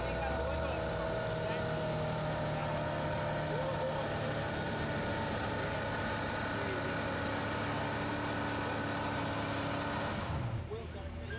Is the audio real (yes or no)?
yes